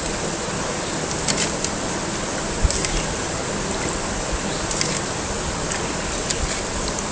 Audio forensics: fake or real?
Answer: real